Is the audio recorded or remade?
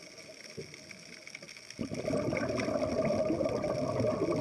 recorded